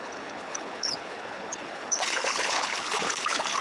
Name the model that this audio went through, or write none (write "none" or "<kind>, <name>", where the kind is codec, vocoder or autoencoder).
codec, HILCodec